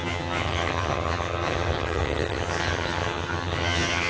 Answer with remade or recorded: remade